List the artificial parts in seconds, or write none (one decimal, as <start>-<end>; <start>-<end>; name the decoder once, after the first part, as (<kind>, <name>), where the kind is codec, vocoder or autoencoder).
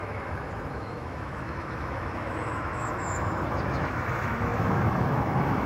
0.0-5.7 (autoencoder, DAC-VAE)